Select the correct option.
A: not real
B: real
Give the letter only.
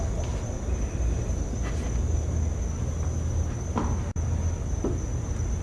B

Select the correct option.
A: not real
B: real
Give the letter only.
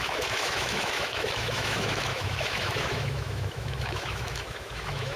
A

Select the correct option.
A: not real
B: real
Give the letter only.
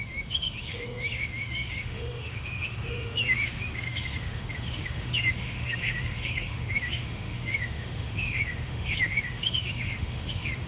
A